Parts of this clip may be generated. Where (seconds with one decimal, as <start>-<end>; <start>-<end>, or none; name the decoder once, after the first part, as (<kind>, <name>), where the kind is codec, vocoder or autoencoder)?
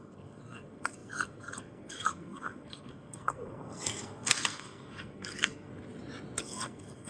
0.0-5.7 (codec, SNAC); 6.4-7.1